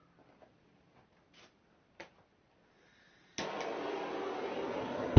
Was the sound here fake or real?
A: real